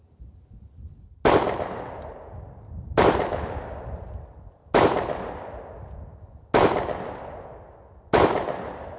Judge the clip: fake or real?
real